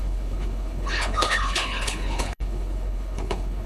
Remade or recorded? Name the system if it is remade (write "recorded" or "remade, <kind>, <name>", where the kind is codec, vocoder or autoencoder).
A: remade, codec, HILCodec